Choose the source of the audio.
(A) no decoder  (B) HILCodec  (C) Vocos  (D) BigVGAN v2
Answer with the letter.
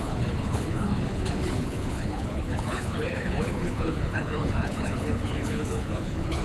B